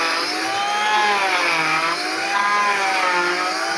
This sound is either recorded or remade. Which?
recorded